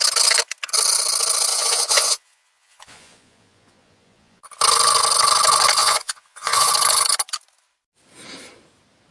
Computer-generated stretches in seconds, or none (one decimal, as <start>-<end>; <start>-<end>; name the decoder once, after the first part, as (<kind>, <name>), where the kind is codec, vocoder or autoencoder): 1.5-4.4 (vocoder, Vocos); 5.8-6.7